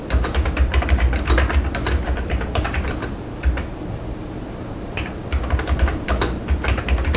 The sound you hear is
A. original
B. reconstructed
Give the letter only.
B